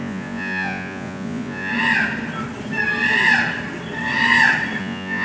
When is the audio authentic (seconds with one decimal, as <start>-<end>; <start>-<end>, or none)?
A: 1.7-4.8